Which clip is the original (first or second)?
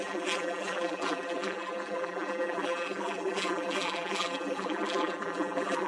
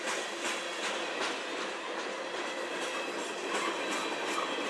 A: second